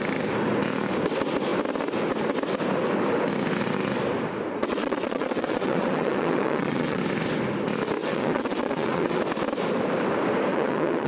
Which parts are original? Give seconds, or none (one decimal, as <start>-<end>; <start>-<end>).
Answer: 0.0-4.6; 7.0-8.0; 9.2-10.5